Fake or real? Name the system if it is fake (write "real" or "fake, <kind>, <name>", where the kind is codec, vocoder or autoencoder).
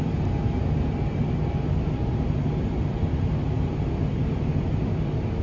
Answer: real